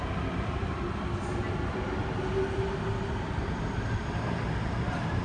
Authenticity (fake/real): real